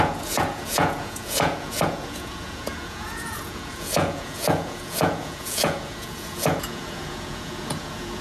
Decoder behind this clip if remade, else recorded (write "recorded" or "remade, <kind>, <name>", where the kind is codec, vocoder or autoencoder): remade, vocoder, Vocos